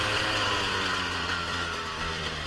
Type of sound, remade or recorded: remade